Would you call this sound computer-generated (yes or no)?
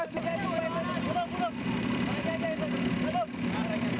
no